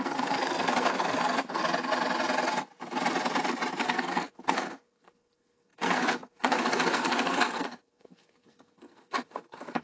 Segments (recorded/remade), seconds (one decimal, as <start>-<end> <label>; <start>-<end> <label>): 0.0-1.6 remade; 1.6-3.8 recorded; 3.8-9.8 remade